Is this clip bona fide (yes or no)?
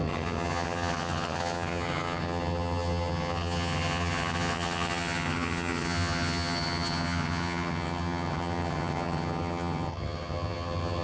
no